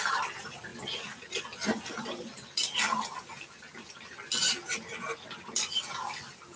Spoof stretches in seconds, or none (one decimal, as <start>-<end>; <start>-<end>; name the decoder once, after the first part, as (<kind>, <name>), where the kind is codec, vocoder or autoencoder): none